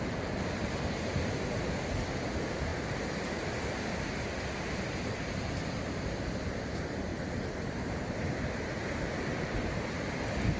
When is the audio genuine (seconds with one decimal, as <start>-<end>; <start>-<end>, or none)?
0.0-7.1; 10.1-10.6